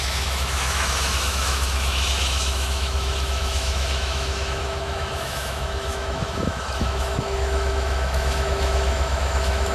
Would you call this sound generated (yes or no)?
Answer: yes